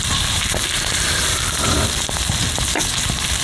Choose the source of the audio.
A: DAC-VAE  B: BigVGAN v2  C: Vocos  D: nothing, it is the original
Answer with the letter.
B